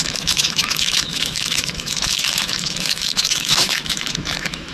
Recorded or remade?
remade